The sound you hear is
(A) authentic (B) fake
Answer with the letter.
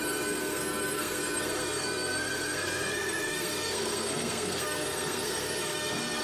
B